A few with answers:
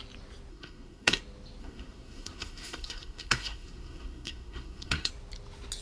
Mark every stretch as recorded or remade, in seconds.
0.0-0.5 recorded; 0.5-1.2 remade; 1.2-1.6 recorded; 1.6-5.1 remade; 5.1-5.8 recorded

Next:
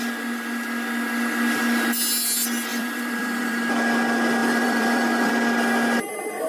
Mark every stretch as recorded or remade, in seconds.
0.0-2.7 recorded; 2.7-3.6 remade; 3.6-4.4 recorded; 4.4-5.3 remade; 5.3-6.5 recorded

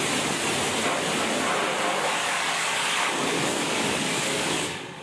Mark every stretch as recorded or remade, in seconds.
0.0-1.9 recorded; 1.9-5.0 remade

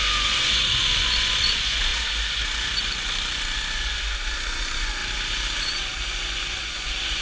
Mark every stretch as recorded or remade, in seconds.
0.0-5.0 remade; 5.0-5.6 recorded; 5.6-7.2 remade